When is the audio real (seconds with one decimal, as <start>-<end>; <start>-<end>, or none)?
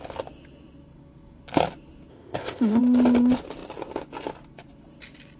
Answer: 0.0-2.1; 2.8-5.4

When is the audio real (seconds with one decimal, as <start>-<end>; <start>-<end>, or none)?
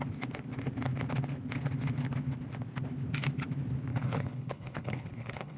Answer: 0.0-3.9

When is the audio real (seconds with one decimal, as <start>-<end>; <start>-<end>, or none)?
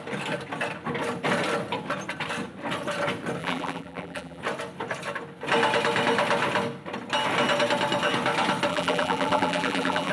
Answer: 0.0-3.4; 4.4-8.7